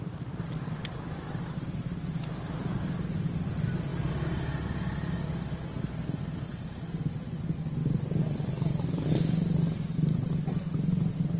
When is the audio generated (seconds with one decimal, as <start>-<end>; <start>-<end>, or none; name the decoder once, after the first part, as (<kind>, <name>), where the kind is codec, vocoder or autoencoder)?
none